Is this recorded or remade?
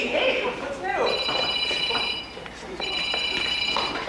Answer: remade